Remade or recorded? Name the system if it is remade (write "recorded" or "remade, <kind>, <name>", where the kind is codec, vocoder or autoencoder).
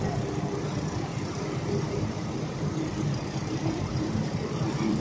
remade, vocoder, BigVGAN v2